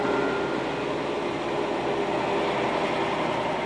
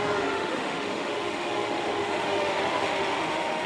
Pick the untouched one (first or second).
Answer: first